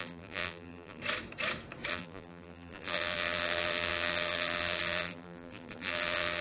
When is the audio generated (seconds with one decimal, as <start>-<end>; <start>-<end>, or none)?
0.0-1.0; 1.9-6.4